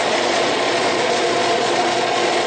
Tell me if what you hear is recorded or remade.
remade